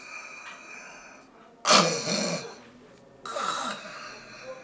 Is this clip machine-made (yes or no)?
no